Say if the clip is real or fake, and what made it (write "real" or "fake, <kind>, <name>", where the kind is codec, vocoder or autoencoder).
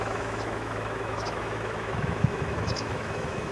fake, autoencoder, DAC-VAE